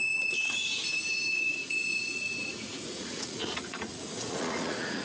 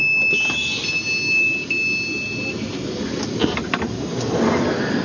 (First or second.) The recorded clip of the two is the second